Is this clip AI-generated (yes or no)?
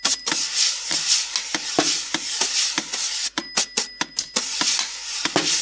no